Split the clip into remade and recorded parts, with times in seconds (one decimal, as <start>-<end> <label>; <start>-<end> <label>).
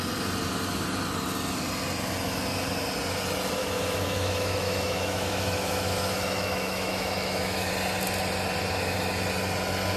0.0-3.6 recorded; 3.6-7.7 remade; 7.7-10.0 recorded